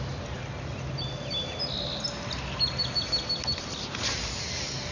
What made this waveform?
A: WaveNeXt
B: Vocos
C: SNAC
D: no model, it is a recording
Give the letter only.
D